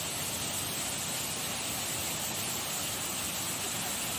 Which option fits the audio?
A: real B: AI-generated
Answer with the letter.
A